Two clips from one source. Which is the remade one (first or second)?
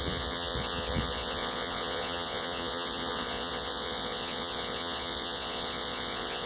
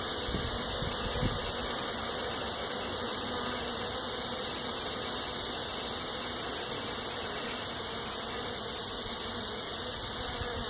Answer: first